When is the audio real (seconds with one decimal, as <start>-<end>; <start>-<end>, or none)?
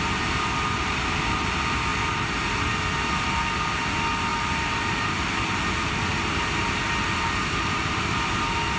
0.0-4.3; 5.1-6.1; 8.4-8.8